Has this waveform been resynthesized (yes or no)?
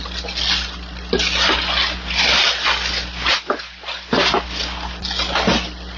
no